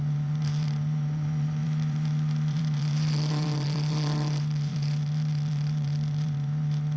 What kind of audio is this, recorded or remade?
remade